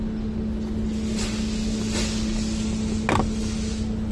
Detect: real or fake real